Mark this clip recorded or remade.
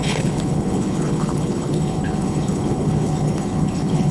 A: remade